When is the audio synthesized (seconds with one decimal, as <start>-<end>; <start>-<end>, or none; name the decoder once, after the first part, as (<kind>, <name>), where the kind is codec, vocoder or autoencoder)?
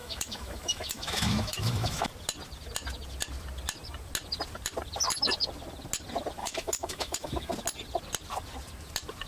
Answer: 0.0-2.1 (autoencoder, DAC-VAE); 6.4-7.5